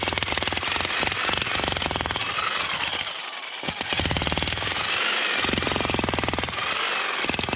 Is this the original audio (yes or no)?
yes